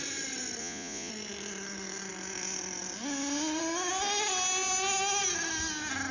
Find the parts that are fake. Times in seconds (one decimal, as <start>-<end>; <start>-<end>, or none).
0.6-1.1